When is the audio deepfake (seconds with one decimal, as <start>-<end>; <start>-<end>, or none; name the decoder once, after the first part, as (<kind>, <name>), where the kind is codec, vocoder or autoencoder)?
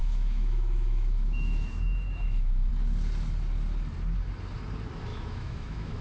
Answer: 0.0-2.7 (autoencoder, DAC-VAE); 5.1-6.0